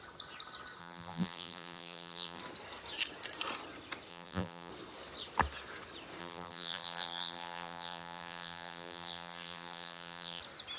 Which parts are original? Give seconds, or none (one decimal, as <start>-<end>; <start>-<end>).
0.0-0.8; 2.4-4.1; 4.7-6.2; 10.4-10.8